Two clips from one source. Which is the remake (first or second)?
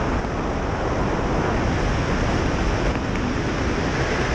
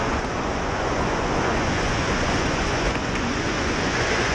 second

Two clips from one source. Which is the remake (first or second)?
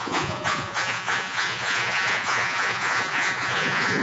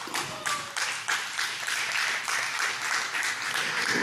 first